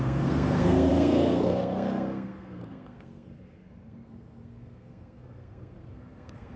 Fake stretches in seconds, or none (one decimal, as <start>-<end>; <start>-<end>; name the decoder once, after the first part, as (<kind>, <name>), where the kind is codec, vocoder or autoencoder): 0.0-6.6 (codec, SNAC)